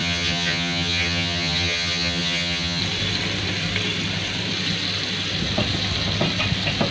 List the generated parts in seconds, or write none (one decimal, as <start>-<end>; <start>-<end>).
0.0-2.8